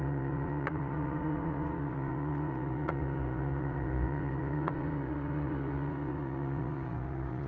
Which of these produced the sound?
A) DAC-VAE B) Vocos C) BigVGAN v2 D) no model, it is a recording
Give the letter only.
B